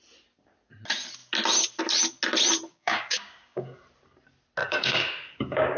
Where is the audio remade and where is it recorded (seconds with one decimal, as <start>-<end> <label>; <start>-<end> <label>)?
0.0-2.7 recorded; 2.7-3.8 remade; 3.8-4.6 recorded; 4.6-5.8 remade